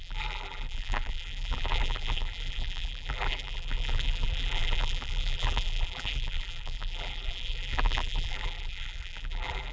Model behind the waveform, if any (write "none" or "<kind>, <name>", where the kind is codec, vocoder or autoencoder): vocoder, BigVGAN v2